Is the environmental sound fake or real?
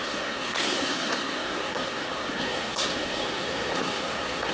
fake